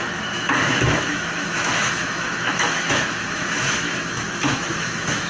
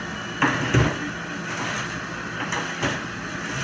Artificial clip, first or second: first